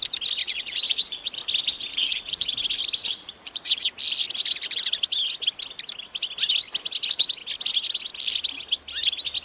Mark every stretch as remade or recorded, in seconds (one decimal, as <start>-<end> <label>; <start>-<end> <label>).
0.0-0.4 recorded; 0.4-1.4 remade; 1.4-1.9 recorded; 1.9-2.5 remade; 2.5-3.0 recorded; 3.0-3.8 remade; 3.8-9.4 recorded